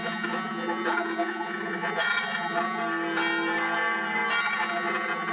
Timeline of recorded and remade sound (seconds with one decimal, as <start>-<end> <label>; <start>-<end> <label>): 0.0-2.8 remade; 2.8-4.4 recorded; 4.4-5.3 remade